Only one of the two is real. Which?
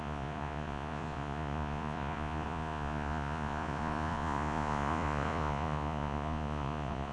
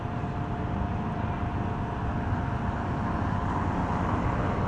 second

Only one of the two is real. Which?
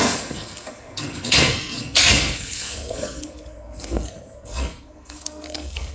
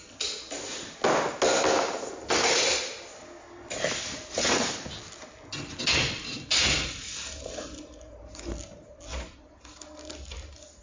second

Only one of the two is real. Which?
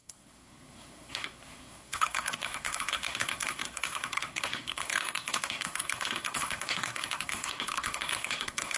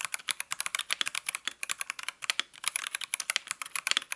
second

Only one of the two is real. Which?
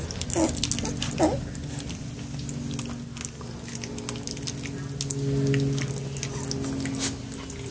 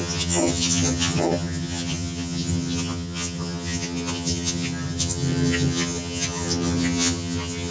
first